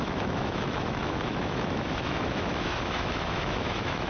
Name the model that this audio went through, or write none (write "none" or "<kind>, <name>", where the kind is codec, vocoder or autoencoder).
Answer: autoencoder, DAC-VAE